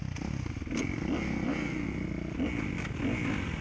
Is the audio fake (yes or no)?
no